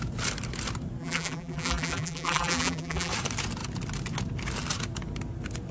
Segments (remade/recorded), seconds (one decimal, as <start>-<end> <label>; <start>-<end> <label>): 0.0-1.0 recorded; 1.0-3.1 remade; 3.1-5.7 recorded